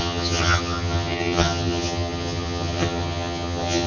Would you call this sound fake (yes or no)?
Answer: yes